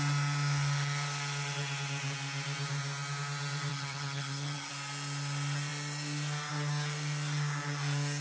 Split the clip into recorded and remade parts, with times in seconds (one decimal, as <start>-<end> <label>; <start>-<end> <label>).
0.0-3.7 recorded; 3.7-4.7 remade; 4.7-8.2 recorded